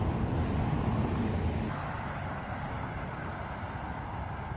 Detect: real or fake real